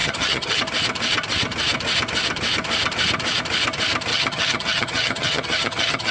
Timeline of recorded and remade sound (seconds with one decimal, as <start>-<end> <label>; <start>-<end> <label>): 0.0-0.6 remade; 0.6-4.1 recorded; 4.1-6.1 remade